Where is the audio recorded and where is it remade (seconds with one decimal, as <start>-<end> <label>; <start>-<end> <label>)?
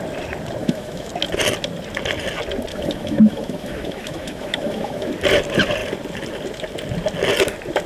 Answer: 0.0-0.6 recorded; 0.6-1.1 remade; 1.1-2.7 recorded; 2.7-5.1 remade; 5.1-7.9 recorded